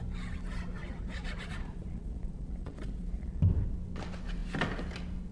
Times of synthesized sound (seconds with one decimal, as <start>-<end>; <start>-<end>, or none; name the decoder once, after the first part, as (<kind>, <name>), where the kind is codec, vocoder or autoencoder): 0.8-3.4 (vocoder, Vocos)